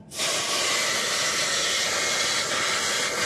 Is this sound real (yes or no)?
yes